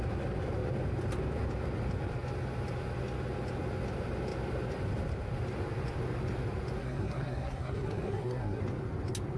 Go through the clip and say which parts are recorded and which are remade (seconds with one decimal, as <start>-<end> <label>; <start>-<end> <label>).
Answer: 0.0-6.8 recorded; 6.8-8.6 remade; 8.6-9.4 recorded